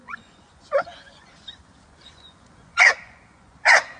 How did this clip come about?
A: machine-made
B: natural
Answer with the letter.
A